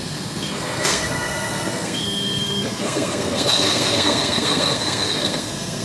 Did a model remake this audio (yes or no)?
yes